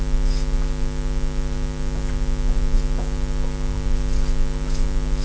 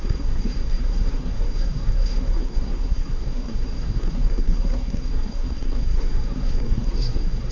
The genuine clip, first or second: first